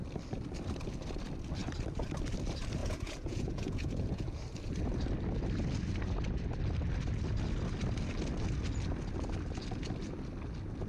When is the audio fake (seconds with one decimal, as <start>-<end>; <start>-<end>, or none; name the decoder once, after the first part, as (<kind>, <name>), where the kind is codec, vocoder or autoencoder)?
2.8-4.4 (vocoder, Vocos)